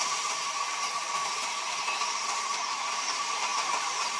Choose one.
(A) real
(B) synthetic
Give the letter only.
B